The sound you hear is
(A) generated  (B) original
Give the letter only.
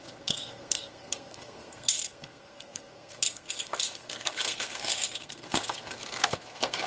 A